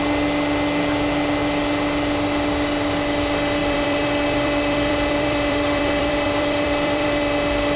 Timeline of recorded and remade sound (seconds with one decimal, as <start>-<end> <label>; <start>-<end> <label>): 0.0-3.6 recorded; 3.6-7.2 remade; 7.2-7.8 recorded